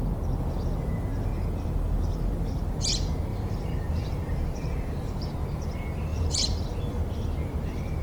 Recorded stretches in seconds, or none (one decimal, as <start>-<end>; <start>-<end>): 0.0-3.3; 5.3-6.1; 7.0-8.0